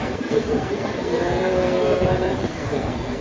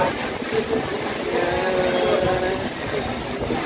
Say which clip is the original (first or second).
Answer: second